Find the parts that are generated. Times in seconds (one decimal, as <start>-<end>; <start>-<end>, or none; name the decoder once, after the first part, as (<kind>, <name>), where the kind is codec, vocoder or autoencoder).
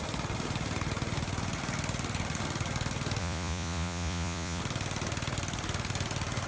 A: 3.2-4.6 (vocoder, Vocos)